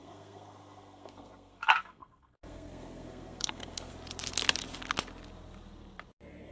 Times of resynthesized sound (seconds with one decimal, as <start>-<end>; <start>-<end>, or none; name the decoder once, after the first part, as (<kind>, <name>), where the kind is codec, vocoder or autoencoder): 0.0-3.9 (codec, SNAC)